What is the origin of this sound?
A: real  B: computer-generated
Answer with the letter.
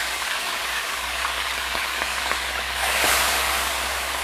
B